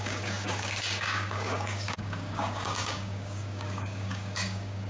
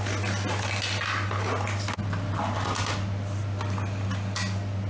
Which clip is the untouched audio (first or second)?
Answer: second